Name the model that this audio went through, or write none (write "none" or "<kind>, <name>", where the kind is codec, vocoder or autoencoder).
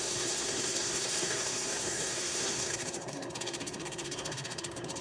codec, SNAC